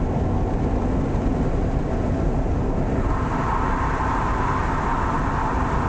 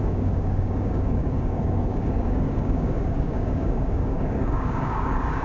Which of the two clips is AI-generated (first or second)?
second